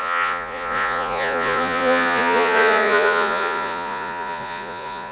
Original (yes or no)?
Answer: no